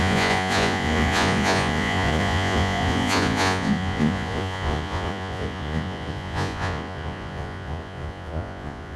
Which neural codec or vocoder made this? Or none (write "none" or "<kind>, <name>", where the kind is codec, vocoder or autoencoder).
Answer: vocoder, Vocos